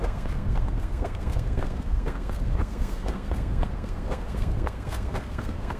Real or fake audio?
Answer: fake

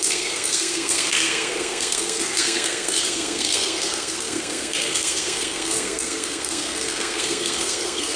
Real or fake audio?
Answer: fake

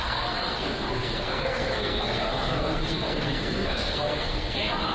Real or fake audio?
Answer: fake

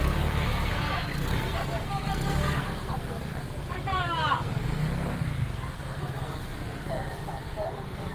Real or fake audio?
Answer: fake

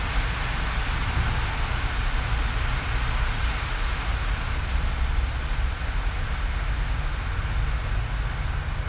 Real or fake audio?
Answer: real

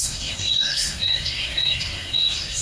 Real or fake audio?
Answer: fake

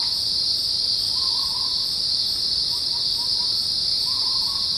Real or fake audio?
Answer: real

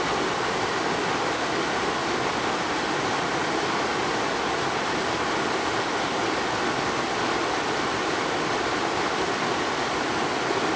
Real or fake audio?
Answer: real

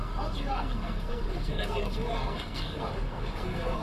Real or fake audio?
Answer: fake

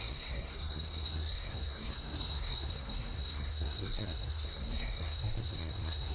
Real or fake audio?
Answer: fake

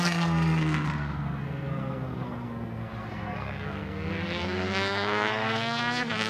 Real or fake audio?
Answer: fake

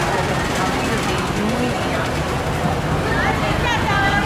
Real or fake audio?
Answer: real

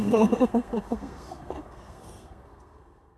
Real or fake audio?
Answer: fake